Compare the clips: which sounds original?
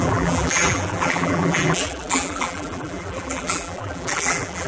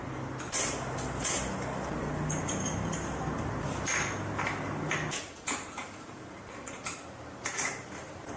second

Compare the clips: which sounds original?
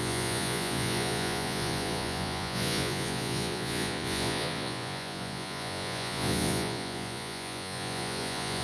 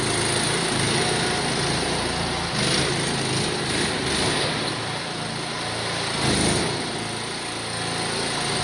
second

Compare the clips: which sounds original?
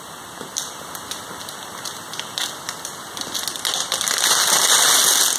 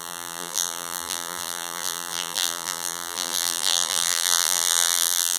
first